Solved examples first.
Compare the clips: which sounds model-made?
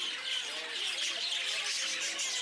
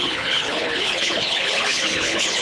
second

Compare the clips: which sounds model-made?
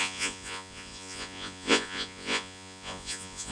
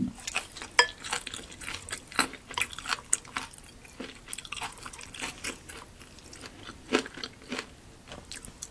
first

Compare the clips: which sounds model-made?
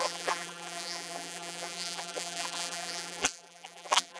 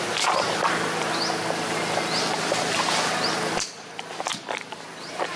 first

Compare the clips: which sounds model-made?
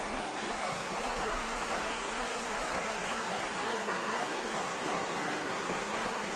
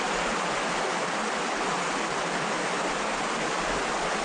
first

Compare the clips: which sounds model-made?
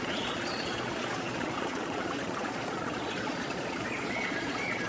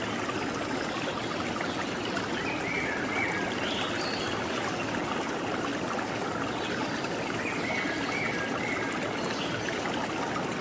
first